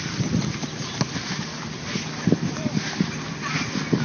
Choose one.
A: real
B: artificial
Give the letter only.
A